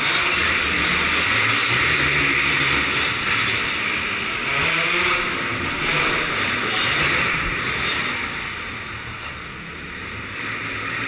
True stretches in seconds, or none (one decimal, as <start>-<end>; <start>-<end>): 0.0-11.1

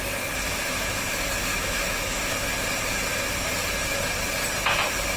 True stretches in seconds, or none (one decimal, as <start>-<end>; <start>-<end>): 0.0-1.5; 2.3-5.2

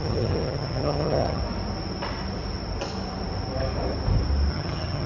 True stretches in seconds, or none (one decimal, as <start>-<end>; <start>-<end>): 1.4-4.5

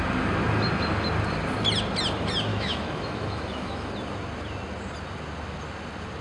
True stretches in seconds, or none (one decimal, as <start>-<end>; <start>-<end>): 0.0-2.5; 3.9-6.2

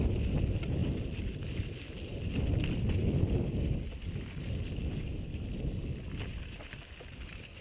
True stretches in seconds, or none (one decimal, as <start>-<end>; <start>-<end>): 0.0-0.8; 5.4-7.6

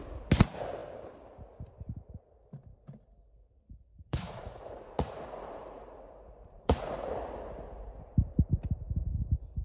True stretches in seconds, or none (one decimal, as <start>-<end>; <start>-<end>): 0.0-3.9; 7.1-9.6

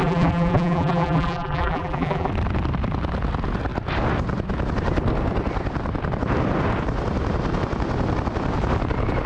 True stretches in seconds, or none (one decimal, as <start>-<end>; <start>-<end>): 2.3-9.3